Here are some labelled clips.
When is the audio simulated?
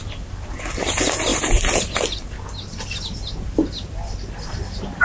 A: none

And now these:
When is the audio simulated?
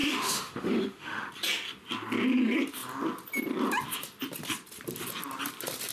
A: 0.0-1.3 (autoencoder, DAC-VAE)